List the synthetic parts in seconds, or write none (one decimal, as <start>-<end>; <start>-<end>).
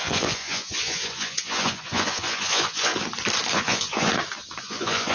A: 0.0-2.9; 3.5-4.1; 4.6-5.1